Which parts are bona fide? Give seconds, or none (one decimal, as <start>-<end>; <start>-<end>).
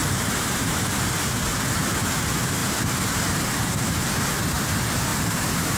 0.9-5.1